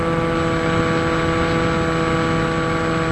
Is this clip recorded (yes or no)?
yes